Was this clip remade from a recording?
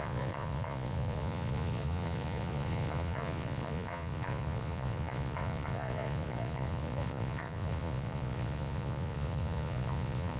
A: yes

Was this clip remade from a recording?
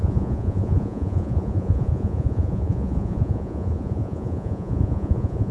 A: yes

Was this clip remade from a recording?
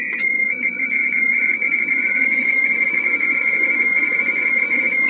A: yes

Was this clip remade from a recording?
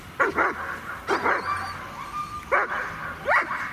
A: no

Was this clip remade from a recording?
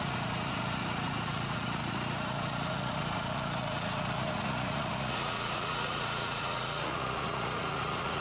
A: yes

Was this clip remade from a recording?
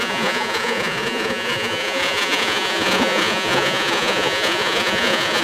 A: yes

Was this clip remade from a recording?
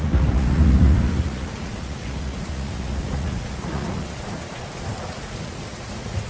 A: yes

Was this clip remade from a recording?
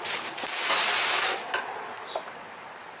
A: no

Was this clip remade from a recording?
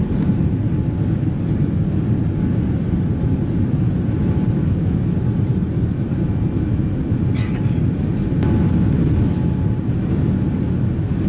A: no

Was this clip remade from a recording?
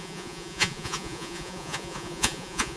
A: yes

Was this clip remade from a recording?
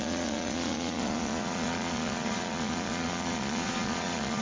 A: yes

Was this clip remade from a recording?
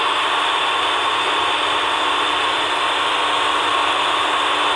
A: no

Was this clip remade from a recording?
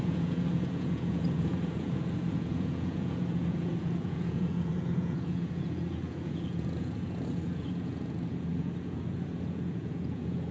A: yes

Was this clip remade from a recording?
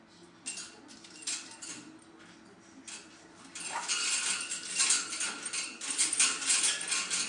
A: no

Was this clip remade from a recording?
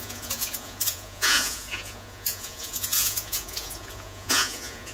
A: yes